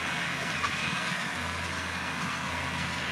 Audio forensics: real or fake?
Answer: fake